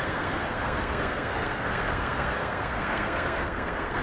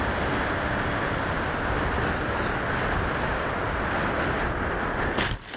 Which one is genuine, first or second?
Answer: second